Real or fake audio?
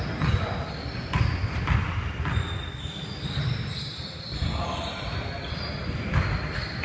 real